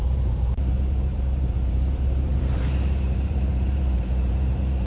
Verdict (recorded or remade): remade